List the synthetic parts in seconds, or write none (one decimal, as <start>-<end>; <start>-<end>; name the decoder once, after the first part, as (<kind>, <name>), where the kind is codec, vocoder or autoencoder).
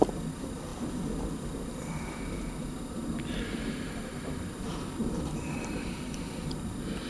none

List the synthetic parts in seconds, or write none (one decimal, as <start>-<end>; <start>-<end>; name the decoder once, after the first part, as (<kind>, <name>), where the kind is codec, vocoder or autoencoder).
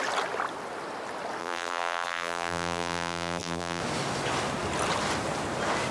1.4-3.8 (vocoder, BigVGAN v2)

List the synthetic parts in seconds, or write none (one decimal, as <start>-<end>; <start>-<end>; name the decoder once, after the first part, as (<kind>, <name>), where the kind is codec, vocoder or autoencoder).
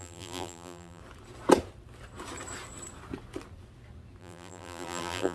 0.0-1.0 (vocoder, BigVGAN v2); 4.2-5.3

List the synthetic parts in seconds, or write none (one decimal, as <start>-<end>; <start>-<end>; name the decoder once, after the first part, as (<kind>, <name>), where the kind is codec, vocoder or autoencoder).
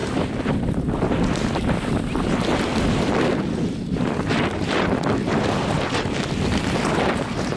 0.0-0.7 (vocoder, BigVGAN v2)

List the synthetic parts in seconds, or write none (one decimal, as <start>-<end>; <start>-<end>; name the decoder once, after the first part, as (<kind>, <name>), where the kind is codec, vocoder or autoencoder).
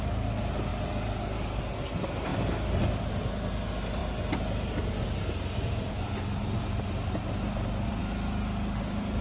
none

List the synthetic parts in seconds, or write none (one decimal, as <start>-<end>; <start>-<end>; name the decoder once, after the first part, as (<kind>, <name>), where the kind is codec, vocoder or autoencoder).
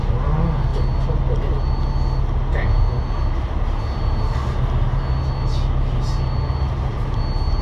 none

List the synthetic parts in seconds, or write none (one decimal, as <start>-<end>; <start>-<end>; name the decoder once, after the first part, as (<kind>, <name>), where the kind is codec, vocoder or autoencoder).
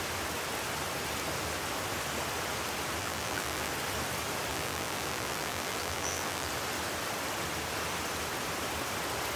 3.0-3.7 (vocoder, BigVGAN v2); 4.5-6.5